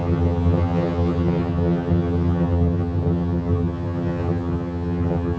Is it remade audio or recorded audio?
remade